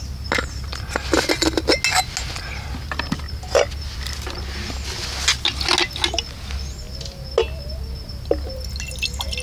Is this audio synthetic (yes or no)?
no